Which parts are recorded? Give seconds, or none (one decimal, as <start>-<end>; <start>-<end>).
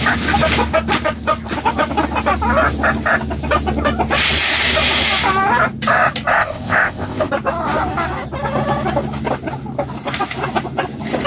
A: 0.0-6.3; 7.3-11.3